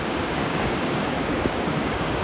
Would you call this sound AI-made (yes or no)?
yes